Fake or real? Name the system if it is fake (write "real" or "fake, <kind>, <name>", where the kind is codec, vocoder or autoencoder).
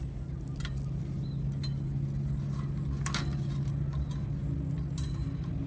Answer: real